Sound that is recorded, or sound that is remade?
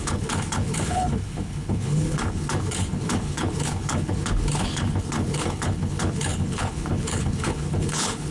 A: remade